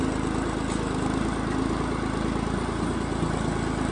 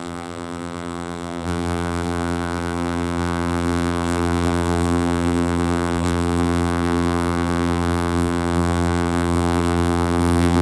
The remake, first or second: second